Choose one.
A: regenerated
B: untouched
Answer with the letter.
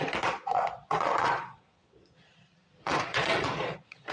A